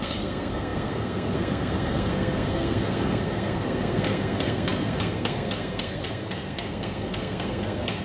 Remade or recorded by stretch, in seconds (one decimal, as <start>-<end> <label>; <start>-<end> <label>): 0.0-8.0 remade